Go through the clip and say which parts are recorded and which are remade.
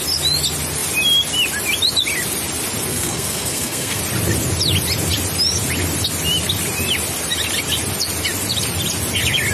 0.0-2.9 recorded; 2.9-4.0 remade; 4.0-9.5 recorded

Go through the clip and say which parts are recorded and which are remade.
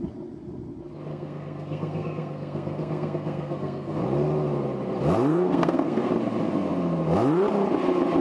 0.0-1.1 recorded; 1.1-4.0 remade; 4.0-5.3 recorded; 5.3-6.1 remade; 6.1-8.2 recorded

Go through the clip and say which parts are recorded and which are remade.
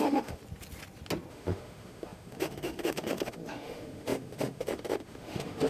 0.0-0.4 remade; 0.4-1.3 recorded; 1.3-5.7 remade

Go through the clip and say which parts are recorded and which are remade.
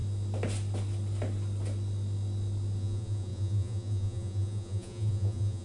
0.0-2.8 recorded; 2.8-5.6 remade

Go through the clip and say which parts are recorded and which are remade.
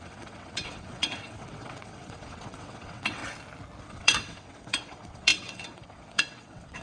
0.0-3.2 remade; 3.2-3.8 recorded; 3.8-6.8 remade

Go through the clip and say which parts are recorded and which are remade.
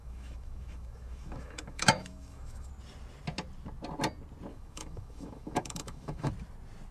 0.0-2.7 remade; 2.7-4.5 recorded; 4.5-6.3 remade; 6.3-6.9 recorded